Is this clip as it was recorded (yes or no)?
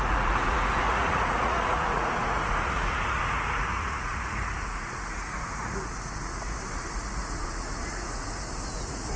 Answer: no